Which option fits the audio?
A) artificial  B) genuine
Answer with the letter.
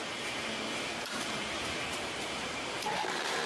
A